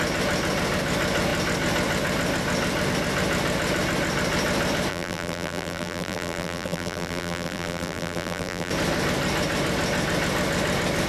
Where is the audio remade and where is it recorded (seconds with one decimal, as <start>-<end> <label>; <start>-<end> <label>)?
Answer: 0.0-4.9 recorded; 4.9-8.7 remade; 8.7-11.1 recorded